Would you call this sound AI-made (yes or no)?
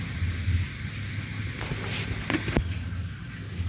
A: no